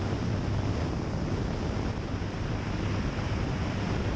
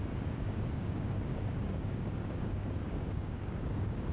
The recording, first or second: first